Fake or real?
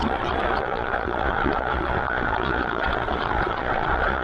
fake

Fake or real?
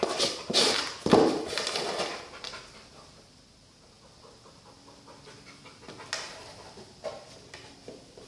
real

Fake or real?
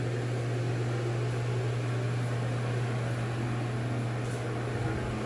real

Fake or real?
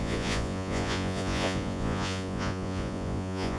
fake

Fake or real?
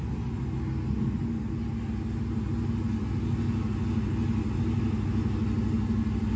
real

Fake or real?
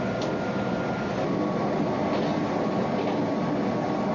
real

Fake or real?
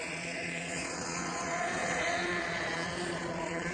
fake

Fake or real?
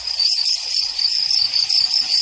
fake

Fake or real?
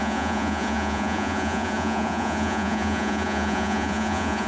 fake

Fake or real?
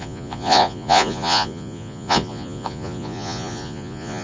fake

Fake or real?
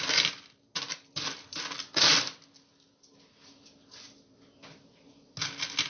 real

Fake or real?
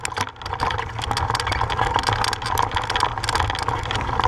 real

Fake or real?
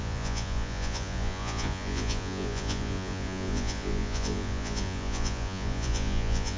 fake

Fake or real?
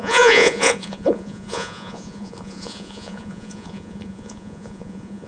fake